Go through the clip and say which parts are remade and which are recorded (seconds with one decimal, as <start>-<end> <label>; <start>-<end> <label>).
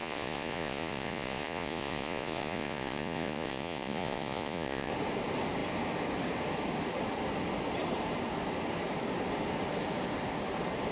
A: 0.0-4.9 remade; 4.9-10.9 recorded